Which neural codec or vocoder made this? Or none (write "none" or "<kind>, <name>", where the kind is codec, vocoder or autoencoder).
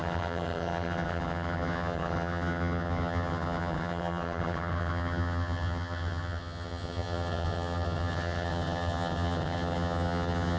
vocoder, HiFi-GAN